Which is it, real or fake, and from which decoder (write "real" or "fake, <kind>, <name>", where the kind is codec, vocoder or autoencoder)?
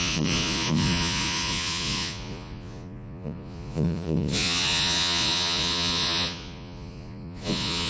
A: fake, vocoder, Vocos